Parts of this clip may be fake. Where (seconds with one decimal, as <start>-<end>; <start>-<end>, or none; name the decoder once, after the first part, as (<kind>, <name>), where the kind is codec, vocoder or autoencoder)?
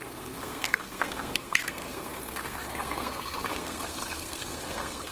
0.0-5.1 (codec, SNAC)